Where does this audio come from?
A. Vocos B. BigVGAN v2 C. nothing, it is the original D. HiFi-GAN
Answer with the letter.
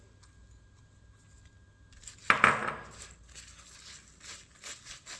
C